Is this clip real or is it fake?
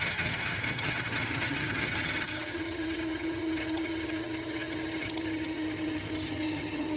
fake